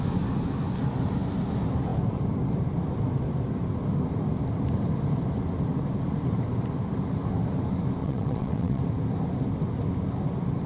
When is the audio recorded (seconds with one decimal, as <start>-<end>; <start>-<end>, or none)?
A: 0.0-8.0; 8.8-10.7